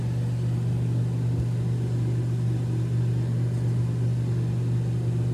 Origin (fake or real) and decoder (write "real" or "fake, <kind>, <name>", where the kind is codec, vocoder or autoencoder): real